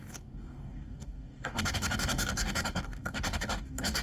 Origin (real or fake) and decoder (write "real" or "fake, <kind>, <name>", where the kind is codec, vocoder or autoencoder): fake, codec, DAC